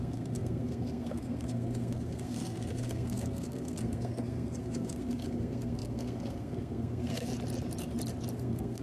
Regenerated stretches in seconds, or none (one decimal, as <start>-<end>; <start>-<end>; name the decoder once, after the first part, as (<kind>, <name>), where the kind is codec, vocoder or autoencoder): 0.0-7.3 (codec, SNAC); 8.4-8.8